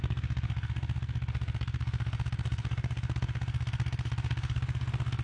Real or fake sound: fake